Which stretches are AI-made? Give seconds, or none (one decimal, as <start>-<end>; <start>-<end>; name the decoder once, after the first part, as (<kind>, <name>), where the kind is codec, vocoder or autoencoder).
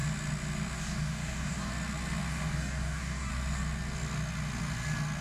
0.8-1.7 (codec, DAC); 2.3-3.3